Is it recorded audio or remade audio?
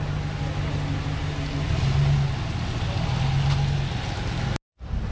recorded